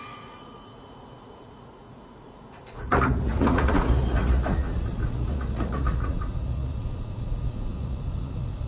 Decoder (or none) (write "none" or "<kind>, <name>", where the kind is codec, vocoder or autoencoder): vocoder, Vocos